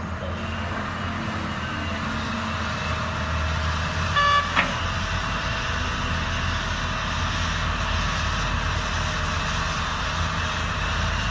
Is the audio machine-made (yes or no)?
no